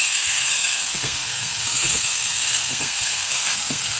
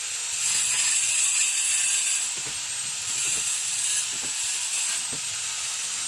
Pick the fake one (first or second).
first